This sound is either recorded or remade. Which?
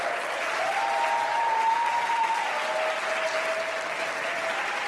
recorded